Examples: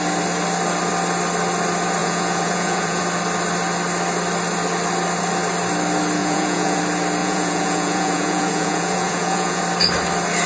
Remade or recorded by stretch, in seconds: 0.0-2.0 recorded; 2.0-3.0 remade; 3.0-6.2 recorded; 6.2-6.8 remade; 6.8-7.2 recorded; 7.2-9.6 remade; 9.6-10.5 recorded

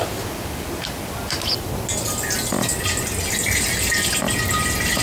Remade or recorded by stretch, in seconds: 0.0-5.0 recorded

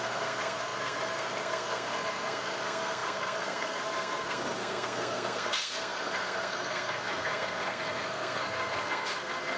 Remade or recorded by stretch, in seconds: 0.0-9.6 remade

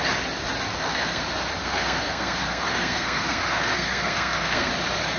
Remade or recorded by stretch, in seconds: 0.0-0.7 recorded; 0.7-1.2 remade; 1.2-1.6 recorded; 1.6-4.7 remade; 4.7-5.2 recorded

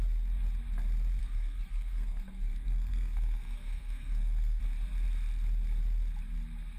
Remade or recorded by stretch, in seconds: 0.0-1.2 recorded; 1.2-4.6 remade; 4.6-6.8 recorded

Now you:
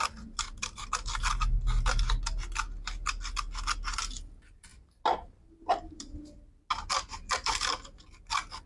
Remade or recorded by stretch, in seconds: 0.0-8.7 recorded

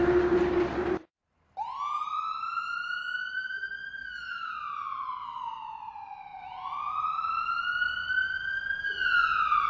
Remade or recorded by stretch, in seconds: 0.0-4.0 recorded; 4.0-4.5 remade; 4.5-9.7 recorded